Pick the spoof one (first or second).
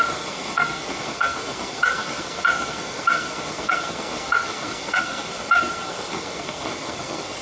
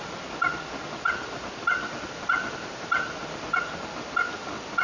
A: first